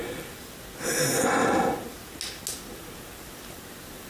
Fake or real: real